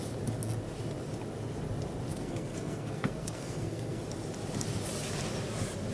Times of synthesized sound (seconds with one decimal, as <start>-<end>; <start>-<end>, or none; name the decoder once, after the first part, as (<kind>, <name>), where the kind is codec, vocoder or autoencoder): 2.1-4.1 (codec, SNAC)